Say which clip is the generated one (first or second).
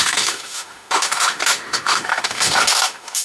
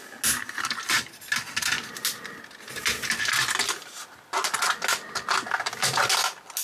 first